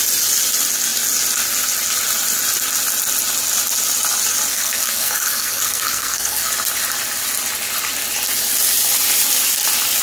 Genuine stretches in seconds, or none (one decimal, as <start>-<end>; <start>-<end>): 0.0-4.5; 6.5-10.0